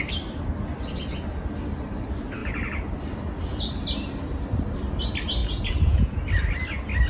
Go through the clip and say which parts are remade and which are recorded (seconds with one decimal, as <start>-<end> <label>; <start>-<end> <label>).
0.0-5.4 recorded; 5.4-6.2 remade; 6.2-7.1 recorded